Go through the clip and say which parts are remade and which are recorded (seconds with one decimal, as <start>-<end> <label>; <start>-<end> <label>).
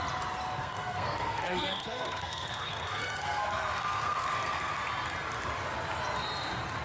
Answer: 0.0-0.6 recorded; 0.6-4.7 remade; 4.7-6.8 recorded